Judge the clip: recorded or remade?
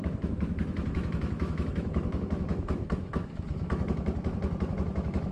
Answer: remade